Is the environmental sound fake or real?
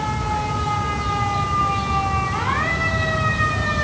real